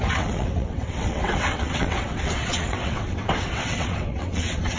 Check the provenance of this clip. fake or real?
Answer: fake